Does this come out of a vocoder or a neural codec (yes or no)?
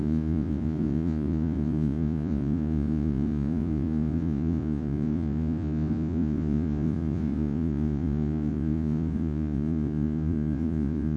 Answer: yes